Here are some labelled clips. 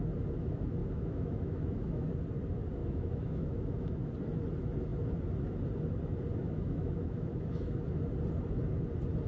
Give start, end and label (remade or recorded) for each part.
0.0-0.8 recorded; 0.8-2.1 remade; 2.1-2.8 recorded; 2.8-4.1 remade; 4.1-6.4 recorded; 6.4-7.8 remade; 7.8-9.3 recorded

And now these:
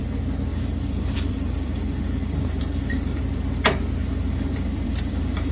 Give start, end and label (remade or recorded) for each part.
0.0-0.5 recorded; 0.5-3.2 remade; 3.2-4.2 recorded; 4.2-5.5 remade

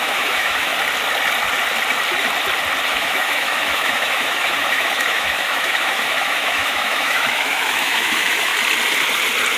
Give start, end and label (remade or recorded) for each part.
0.0-0.7 remade; 0.7-2.9 recorded; 2.9-8.5 remade; 8.5-9.6 recorded

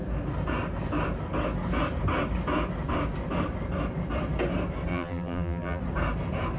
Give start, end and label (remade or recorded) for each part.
0.0-4.9 recorded; 4.9-5.8 remade; 5.8-6.6 recorded

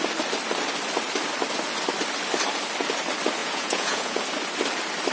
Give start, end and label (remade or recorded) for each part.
0.0-3.4 recorded; 3.4-4.2 remade; 4.2-5.1 recorded